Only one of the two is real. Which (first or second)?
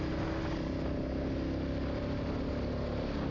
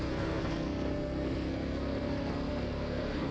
first